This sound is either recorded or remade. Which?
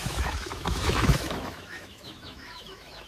remade